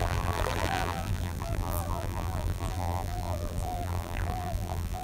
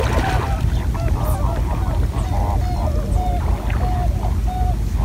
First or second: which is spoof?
first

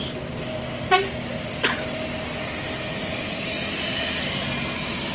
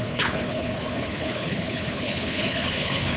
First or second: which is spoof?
second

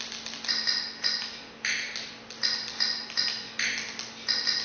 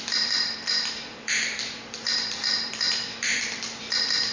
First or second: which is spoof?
second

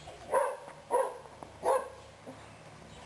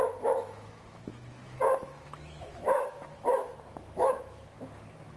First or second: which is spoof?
second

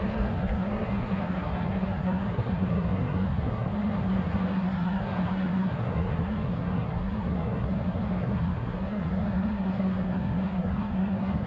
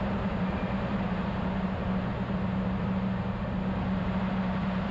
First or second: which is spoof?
first